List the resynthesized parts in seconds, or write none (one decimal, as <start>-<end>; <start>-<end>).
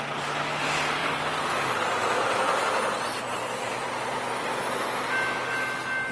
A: none